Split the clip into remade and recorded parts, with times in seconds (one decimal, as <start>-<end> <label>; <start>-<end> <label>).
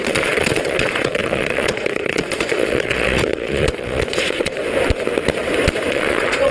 0.0-4.6 remade; 4.6-5.9 recorded; 5.9-6.5 remade